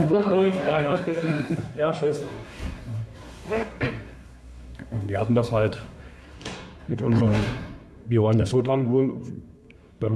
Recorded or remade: remade